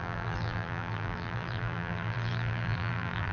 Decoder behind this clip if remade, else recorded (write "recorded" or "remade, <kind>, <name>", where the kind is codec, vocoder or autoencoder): remade, vocoder, BigVGAN v2